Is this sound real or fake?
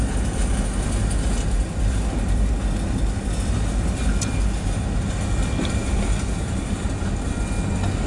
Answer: real